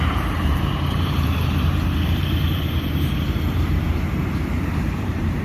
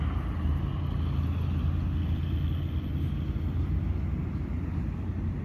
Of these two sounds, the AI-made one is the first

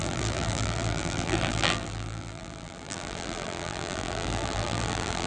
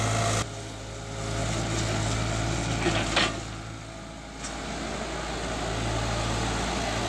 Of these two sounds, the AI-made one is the first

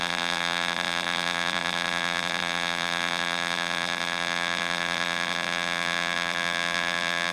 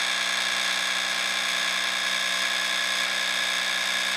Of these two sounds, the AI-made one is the first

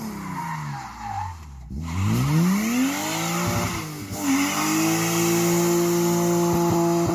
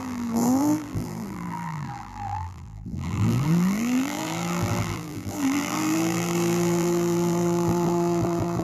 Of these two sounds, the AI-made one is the second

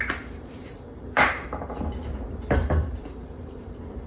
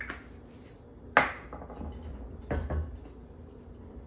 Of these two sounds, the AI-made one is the first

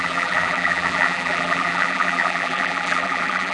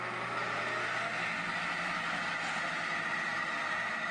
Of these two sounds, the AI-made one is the first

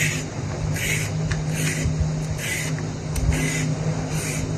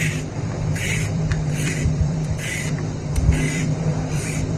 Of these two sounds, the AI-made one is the second